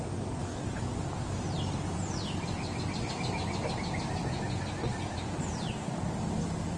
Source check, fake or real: real